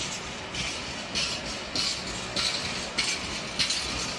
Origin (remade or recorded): recorded